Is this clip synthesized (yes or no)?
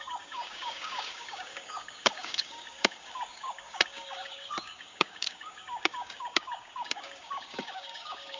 yes